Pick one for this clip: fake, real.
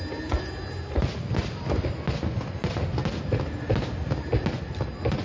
real